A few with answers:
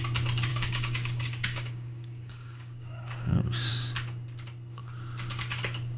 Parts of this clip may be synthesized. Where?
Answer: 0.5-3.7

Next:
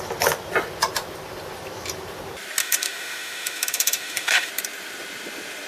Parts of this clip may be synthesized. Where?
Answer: 2.6-4.5

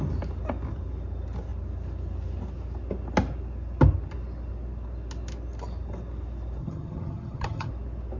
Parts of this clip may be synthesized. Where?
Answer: 6.6-7.7

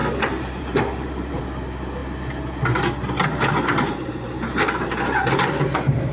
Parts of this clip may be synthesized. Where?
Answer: 0.0-1.4; 3.7-6.1

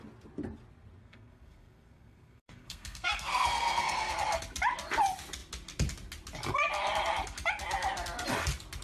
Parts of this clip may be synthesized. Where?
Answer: 1.0-4.1

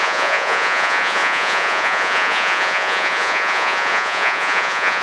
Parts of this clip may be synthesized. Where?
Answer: 0.0-5.0